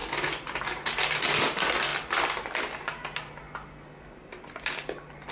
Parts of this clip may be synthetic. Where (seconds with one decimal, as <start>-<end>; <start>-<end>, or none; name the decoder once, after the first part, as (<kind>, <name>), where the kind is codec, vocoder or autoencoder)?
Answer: none